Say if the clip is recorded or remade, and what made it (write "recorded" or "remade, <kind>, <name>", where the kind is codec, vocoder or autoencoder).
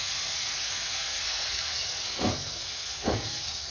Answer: remade, codec, SNAC